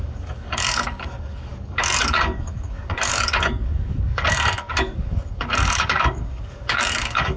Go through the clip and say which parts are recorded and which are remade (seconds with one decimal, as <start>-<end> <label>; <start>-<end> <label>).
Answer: 0.0-7.4 remade